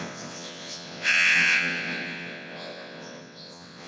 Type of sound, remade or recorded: remade